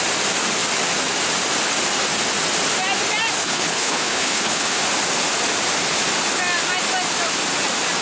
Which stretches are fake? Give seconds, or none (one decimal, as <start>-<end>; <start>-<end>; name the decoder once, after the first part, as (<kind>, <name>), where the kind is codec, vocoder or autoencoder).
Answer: 3.4-4.8 (codec, HILCodec)